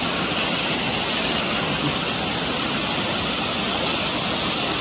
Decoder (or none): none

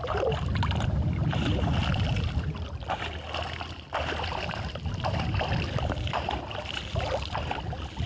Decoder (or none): vocoder, BigVGAN v2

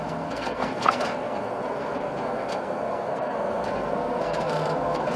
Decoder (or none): codec, SNAC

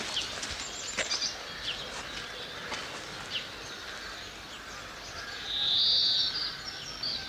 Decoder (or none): none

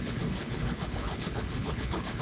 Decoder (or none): codec, HILCodec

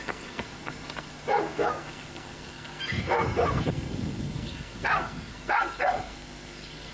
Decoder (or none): codec, SNAC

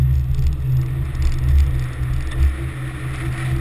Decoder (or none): none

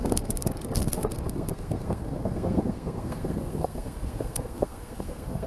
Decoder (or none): codec, SNAC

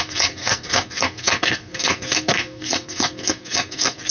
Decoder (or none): codec, SNAC